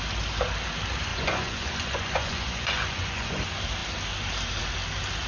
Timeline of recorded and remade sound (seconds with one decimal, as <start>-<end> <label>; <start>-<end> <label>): 0.0-1.1 recorded; 1.1-3.4 remade; 3.4-5.3 recorded